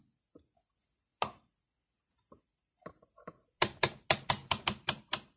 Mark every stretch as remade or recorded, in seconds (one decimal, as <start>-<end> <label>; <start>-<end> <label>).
0.0-5.4 recorded